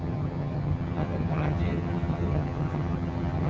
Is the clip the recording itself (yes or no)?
no